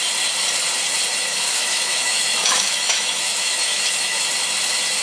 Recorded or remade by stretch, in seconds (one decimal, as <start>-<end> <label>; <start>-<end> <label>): 0.0-1.3 recorded; 1.3-4.3 remade; 4.3-5.0 recorded